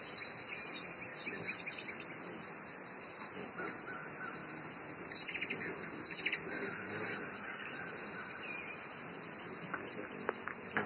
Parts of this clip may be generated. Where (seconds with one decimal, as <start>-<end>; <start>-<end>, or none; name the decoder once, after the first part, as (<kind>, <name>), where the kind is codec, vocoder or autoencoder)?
none